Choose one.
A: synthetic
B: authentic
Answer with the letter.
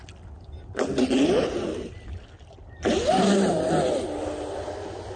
B